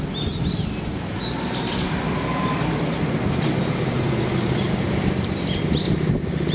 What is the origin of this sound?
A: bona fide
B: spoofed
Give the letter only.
A